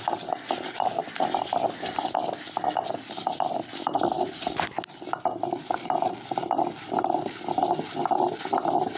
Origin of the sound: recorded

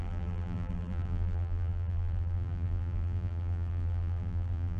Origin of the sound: remade